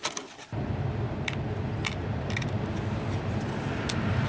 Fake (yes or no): no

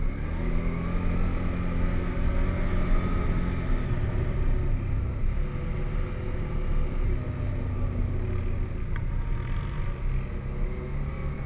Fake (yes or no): no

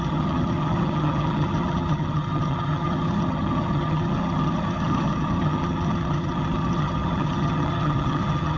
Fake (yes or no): yes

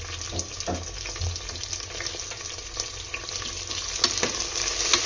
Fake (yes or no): no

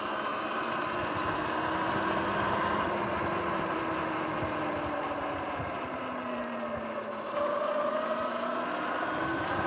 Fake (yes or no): no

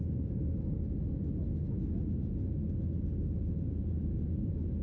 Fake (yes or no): no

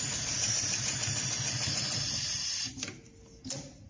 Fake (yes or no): no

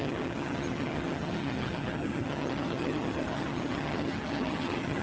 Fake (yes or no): yes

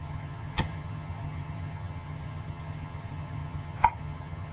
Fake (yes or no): yes